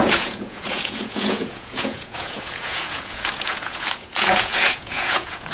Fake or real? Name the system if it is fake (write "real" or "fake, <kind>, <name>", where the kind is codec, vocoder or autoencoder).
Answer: fake, vocoder, Vocos